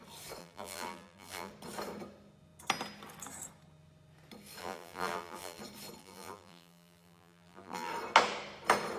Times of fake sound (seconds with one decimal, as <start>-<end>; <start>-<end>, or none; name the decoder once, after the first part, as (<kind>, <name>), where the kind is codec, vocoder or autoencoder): 0.4-1.5 (vocoder, BigVGAN v2); 4.6-5.6; 6.0-7.9